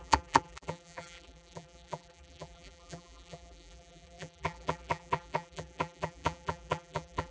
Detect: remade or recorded remade